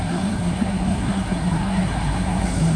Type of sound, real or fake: fake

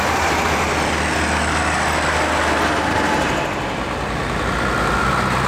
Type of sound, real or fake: real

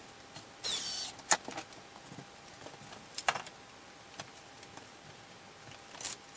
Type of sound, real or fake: real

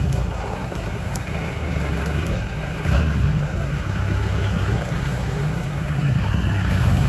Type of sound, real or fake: fake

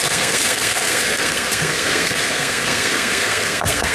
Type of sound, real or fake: fake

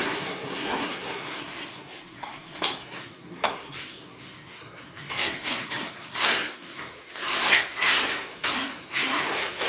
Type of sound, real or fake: fake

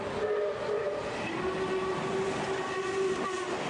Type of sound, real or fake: real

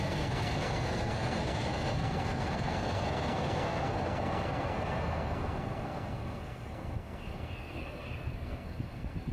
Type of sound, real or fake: fake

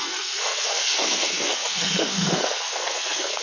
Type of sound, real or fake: fake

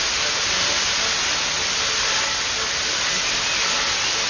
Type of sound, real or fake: real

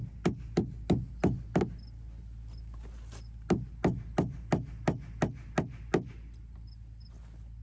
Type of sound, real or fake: real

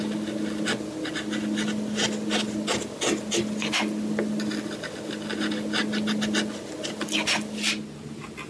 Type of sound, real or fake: real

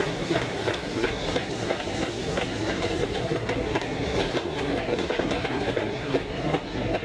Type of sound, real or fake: fake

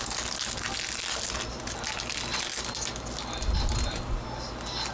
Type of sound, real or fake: real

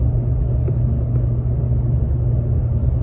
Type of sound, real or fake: real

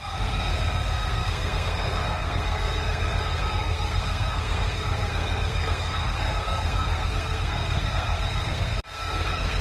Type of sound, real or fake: fake